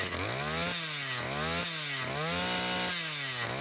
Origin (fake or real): real